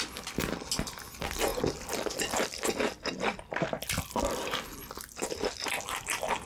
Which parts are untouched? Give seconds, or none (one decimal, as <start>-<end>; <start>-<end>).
0.0-6.5